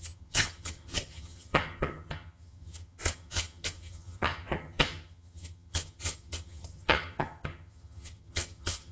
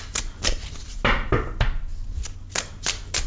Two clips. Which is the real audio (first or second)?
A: second